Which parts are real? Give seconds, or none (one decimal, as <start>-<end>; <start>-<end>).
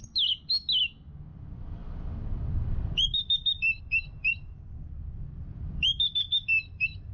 0.0-1.3; 3.8-4.2